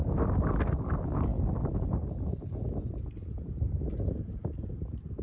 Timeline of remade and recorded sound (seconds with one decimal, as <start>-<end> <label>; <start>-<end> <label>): 0.0-5.2 recorded

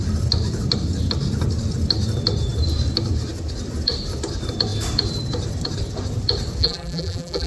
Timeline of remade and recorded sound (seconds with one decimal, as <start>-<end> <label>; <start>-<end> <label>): 0.0-6.6 recorded; 6.6-7.5 remade

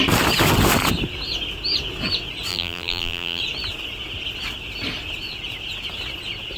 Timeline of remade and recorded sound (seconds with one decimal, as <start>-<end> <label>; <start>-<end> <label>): 0.0-2.5 recorded; 2.5-3.4 remade; 3.4-6.6 recorded

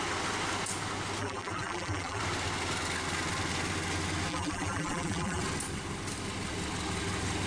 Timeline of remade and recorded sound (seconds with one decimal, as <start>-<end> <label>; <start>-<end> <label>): 0.0-1.2 recorded; 1.2-2.2 remade; 2.2-4.3 recorded; 4.3-5.4 remade; 5.4-7.5 recorded

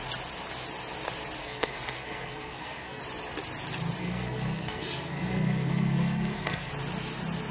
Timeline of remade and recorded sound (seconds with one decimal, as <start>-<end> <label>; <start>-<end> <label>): 0.0-1.4 recorded; 1.4-3.0 remade; 3.0-4.0 recorded; 4.0-6.7 remade; 6.7-7.5 recorded

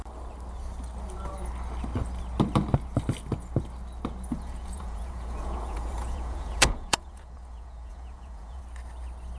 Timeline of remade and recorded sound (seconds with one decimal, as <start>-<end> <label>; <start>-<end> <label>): 0.0-4.3 recorded; 4.3-8.6 remade; 8.6-9.4 recorded

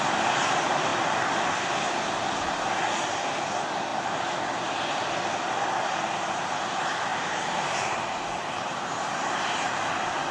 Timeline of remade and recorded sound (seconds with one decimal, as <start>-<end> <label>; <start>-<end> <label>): 0.0-7.1 recorded; 7.1-9.9 remade; 9.9-10.3 recorded

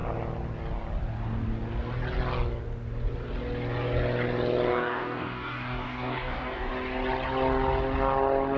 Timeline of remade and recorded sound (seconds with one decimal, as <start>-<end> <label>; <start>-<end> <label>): 0.0-4.7 recorded; 4.7-6.7 remade; 6.7-8.6 recorded